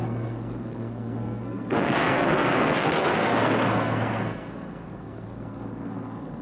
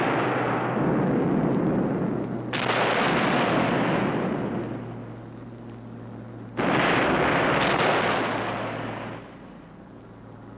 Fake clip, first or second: first